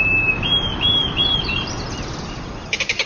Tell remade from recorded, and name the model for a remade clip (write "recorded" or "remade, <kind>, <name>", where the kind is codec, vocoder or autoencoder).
recorded